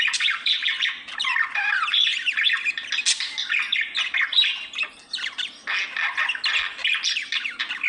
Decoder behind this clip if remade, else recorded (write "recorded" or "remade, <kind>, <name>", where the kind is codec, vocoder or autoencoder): recorded